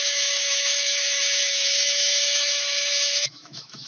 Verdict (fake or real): fake